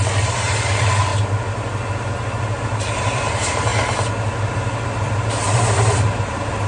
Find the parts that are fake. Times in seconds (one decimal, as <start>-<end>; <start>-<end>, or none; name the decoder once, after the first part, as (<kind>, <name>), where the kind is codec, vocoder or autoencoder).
0.0-1.1 (vocoder, BigVGAN v2); 2.6-3.7; 4.5-6.7